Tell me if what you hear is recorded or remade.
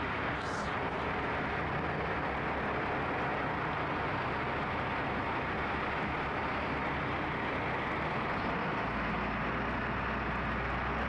recorded